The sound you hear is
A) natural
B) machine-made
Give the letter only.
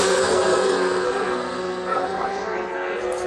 B